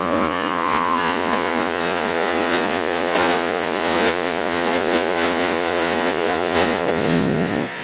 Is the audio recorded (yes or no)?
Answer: no